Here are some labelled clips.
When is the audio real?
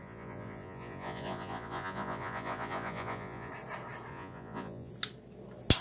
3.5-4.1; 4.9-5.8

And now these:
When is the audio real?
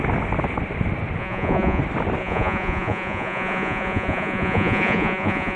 0.0-1.2; 1.8-2.2